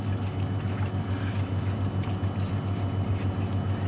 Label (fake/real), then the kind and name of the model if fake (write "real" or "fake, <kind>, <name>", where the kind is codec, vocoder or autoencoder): real